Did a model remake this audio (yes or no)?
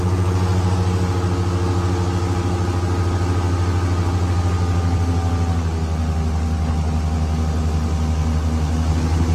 no